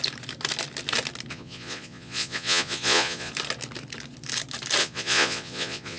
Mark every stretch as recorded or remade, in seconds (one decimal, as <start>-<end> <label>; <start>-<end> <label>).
0.0-1.3 recorded; 1.3-3.3 remade; 3.3-4.8 recorded; 4.8-6.0 remade